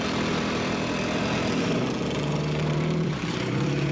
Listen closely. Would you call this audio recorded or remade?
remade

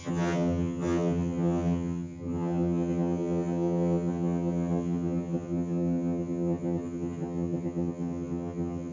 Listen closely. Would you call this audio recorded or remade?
remade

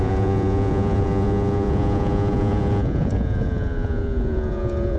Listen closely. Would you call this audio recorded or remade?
remade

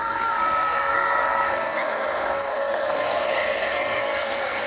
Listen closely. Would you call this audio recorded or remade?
remade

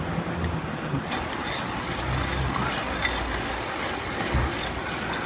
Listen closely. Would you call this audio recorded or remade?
recorded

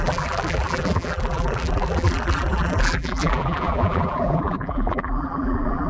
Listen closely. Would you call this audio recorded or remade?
remade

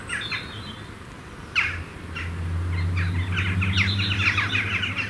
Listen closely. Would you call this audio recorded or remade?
recorded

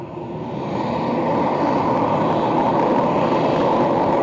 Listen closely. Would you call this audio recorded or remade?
recorded